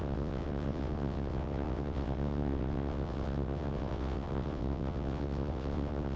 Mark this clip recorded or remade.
remade